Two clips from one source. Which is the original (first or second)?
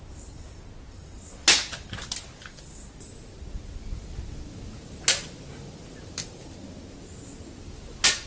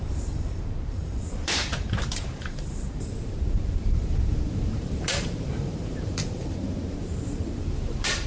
first